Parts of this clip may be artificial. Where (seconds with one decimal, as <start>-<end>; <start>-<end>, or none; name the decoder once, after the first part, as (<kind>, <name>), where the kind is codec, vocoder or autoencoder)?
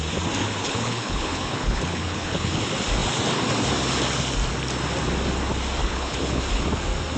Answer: 0.4-2.6 (codec, HILCodec); 5.8-6.4